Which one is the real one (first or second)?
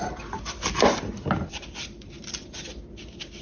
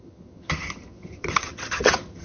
first